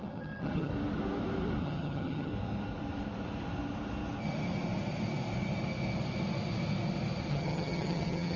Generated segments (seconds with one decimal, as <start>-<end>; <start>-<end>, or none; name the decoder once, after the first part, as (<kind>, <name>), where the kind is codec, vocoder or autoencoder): 0.0-0.7 (vocoder, HiFi-GAN); 1.6-2.3; 7.3-8.4